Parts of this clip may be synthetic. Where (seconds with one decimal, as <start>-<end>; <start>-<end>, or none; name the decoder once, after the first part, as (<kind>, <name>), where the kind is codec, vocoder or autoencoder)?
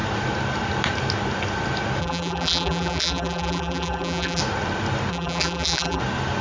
2.0-4.4 (vocoder, BigVGAN v2); 5.1-6.0